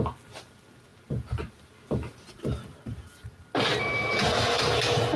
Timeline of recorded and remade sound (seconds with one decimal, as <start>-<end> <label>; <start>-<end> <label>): 0.0-5.2 recorded